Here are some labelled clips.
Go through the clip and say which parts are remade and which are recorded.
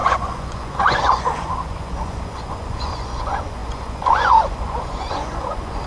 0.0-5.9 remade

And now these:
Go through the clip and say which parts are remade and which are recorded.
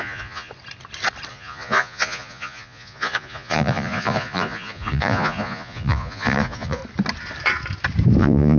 0.0-0.5 remade; 0.5-1.3 recorded; 1.3-6.8 remade; 6.8-8.2 recorded; 8.2-8.6 remade